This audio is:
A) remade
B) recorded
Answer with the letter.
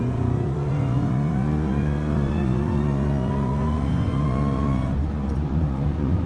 A